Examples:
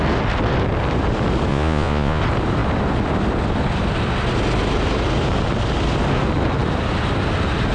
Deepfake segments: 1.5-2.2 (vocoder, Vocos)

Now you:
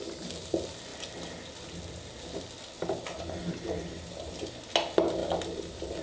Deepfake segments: none

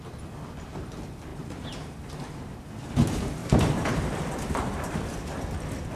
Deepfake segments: 1.3-2.7 (vocoder, BigVGAN v2); 3.4-5.2

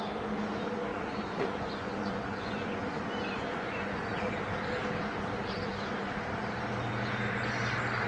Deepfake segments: 0.9-4.3 (vocoder, Vocos)